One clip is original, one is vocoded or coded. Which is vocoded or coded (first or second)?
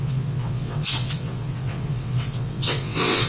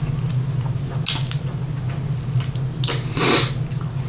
first